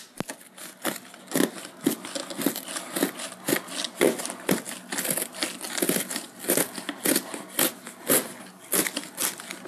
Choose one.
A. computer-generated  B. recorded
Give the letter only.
B